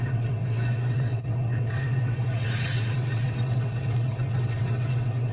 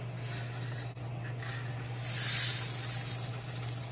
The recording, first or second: second